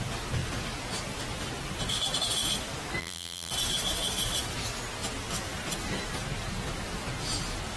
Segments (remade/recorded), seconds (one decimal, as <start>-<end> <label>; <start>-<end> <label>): 0.0-3.0 recorded; 3.0-3.5 remade; 3.5-7.8 recorded